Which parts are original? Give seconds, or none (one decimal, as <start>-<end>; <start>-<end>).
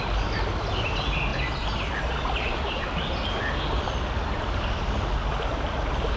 0.0-6.2